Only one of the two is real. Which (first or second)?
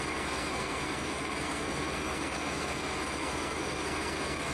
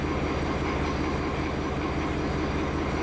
second